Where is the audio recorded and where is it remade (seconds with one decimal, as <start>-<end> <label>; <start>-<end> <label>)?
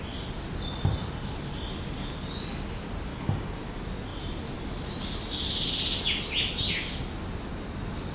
0.0-3.1 recorded; 3.1-3.6 remade; 3.6-8.1 recorded